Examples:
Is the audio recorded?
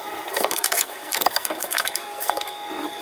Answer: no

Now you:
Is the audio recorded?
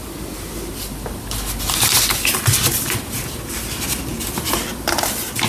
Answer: yes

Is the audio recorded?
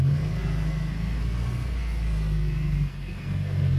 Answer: no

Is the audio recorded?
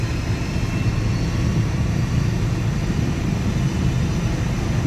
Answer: yes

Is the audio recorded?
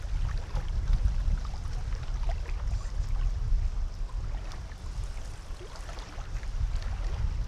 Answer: yes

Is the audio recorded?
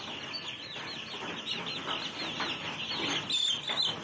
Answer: yes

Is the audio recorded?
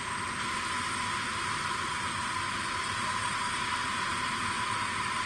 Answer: yes